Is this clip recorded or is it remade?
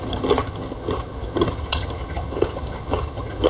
remade